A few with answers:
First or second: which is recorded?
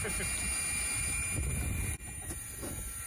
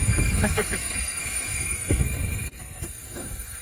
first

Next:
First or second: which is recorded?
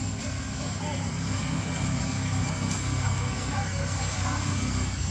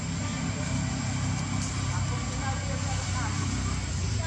second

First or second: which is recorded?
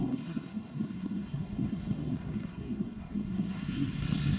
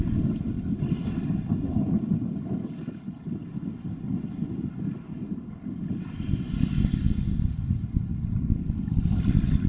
second